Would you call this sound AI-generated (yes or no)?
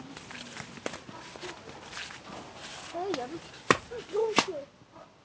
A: no